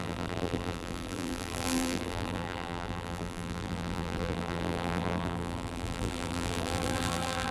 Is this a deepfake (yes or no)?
yes